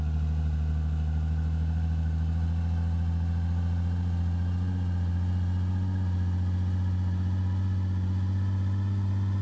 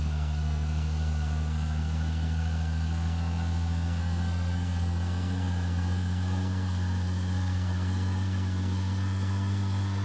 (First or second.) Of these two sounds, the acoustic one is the first